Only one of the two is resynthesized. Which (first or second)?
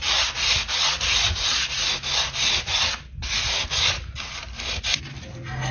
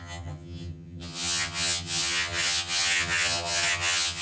second